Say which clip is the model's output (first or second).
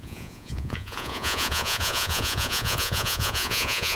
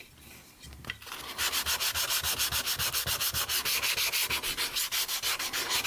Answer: first